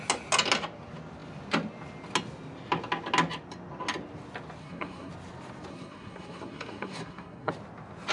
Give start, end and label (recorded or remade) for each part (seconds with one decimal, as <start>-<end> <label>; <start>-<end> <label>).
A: 0.0-4.6 recorded; 4.6-5.1 remade; 5.1-5.7 recorded; 5.7-7.5 remade; 7.5-8.1 recorded

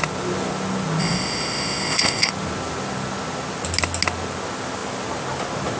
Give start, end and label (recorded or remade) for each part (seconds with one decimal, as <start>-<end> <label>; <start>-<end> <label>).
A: 0.0-1.0 recorded; 1.0-2.3 remade; 2.3-5.8 recorded

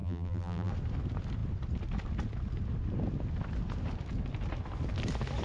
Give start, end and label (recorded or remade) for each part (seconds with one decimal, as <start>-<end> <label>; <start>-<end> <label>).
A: 0.0-0.7 remade; 0.7-5.4 recorded

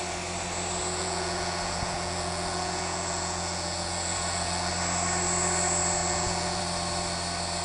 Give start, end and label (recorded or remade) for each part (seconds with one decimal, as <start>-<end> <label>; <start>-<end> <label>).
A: 0.0-1.0 recorded; 1.0-4.7 remade; 4.7-6.0 recorded; 6.0-6.6 remade; 6.6-7.6 recorded

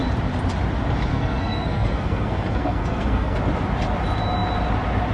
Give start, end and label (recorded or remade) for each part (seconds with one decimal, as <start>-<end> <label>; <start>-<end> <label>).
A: 0.0-1.1 recorded; 1.1-3.4 remade; 3.4-5.1 recorded

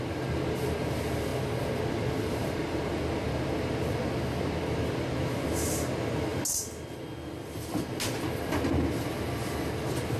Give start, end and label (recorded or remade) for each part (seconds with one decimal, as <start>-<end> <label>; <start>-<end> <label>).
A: 0.0-10.2 recorded